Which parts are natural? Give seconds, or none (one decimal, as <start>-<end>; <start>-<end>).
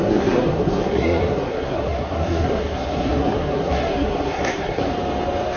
4.9-5.6